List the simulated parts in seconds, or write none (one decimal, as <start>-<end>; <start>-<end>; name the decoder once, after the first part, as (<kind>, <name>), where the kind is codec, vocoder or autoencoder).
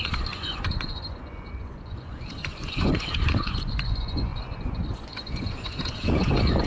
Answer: 0.0-6.7 (vocoder, Vocos)